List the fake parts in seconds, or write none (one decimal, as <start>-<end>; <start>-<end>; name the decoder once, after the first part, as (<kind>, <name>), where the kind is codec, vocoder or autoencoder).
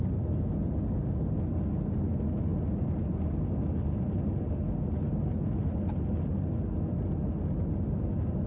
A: none